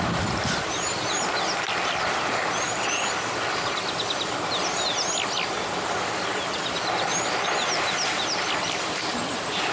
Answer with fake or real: real